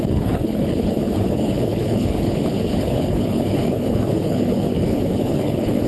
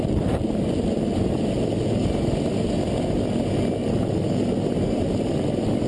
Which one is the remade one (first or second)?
first